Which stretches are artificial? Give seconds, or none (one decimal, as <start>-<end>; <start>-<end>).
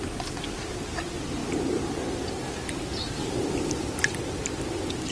none